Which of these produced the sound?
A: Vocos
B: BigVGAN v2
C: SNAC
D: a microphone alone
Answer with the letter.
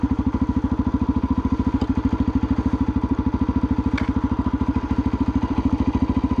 D